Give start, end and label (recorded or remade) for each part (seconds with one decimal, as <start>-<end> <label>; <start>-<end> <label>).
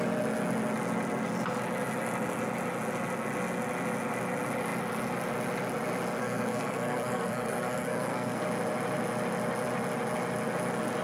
0.0-6.2 recorded; 6.2-8.4 remade; 8.4-11.0 recorded